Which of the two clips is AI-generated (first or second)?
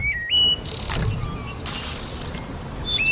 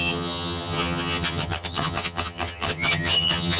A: second